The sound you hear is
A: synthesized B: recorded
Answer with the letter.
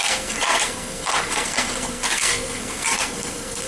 A